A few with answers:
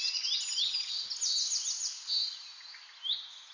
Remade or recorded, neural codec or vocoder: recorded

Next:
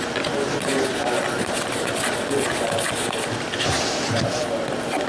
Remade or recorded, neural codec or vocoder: recorded